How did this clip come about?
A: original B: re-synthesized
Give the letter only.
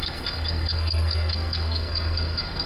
B